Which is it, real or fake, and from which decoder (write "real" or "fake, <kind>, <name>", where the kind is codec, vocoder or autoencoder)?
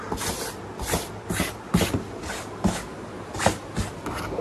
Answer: real